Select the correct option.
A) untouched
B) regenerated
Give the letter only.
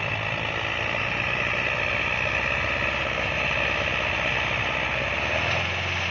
A